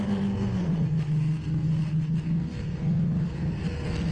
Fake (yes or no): yes